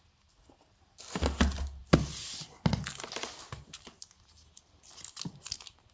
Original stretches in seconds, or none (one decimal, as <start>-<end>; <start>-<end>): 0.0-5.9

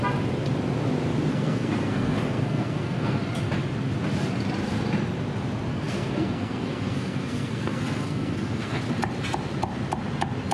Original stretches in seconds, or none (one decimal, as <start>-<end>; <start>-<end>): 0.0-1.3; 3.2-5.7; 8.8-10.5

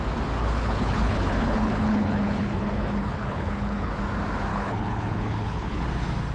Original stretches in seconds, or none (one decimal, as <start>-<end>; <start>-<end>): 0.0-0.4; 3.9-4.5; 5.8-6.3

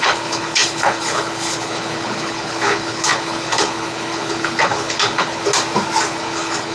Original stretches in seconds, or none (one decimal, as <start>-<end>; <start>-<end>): 5.4-6.1